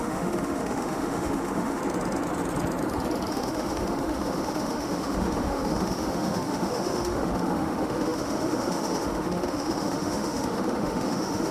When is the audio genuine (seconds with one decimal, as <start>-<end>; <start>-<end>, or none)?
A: 1.8-3.3